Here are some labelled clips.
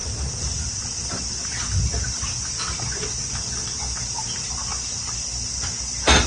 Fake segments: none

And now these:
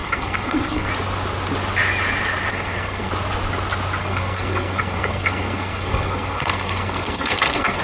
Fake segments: 0.0-0.9 (codec, SNAC); 2.5-3.1; 4.0-7.8

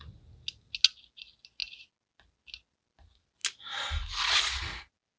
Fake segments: none

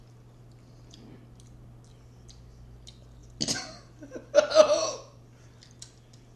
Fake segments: none